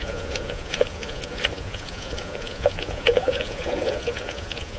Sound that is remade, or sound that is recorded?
remade